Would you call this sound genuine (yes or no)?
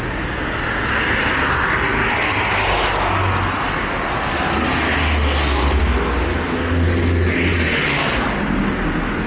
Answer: yes